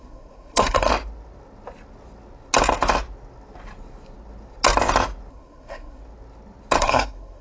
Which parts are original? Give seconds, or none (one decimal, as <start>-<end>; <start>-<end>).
0.9-5.3; 6.0-6.8